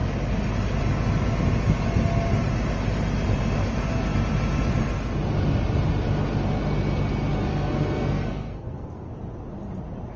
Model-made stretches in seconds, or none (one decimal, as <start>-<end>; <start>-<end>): 7.5-9.1